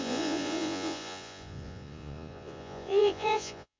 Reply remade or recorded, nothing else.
remade